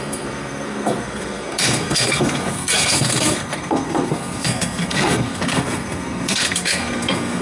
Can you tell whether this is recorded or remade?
remade